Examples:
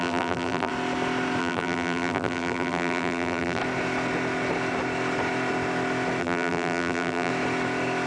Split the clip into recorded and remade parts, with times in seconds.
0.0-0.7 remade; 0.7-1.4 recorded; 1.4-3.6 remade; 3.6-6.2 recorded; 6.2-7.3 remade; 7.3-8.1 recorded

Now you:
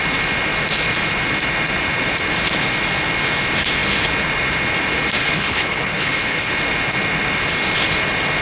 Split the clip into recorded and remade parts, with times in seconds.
0.0-5.2 recorded; 5.2-6.5 remade; 6.5-8.4 recorded

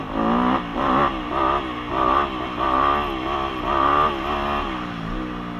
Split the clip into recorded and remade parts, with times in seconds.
0.0-5.6 recorded